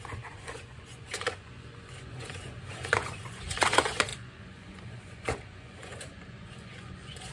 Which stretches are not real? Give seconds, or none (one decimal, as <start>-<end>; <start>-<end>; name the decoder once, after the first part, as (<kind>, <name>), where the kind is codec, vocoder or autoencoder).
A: 0.0-7.3 (vocoder, Vocos)